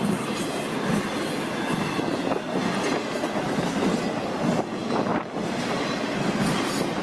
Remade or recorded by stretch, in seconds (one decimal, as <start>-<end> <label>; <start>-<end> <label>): 0.0-5.1 recorded; 5.1-6.1 remade; 6.1-7.0 recorded